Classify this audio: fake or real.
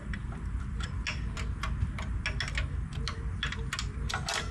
real